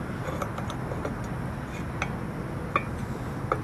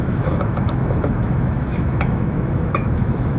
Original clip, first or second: first